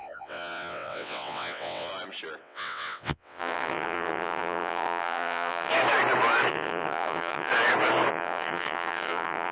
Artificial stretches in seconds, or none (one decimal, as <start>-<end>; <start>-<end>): 0.0-1.9; 2.4-5.7; 6.5-7.5; 8.1-9.5